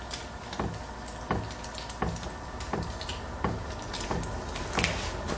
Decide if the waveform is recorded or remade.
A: recorded